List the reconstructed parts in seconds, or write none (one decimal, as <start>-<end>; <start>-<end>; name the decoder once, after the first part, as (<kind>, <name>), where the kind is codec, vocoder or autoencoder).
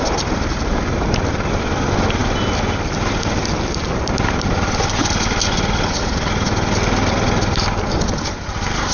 none